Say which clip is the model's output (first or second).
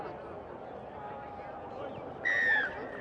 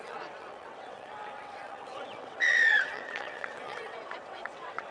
second